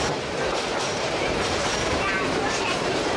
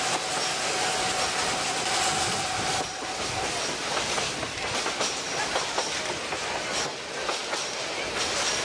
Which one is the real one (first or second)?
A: second